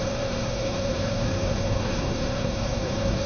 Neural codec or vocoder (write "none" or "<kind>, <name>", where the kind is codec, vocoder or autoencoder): codec, SNAC